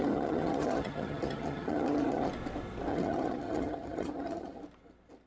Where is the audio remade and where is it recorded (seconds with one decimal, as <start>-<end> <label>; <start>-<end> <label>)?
0.0-2.3 remade; 2.3-2.9 recorded; 2.9-4.6 remade; 4.6-5.3 recorded